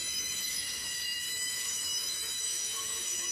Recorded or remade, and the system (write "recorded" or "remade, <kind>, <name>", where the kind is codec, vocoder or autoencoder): remade, autoencoder, DAC-VAE